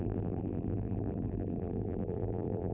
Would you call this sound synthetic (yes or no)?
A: yes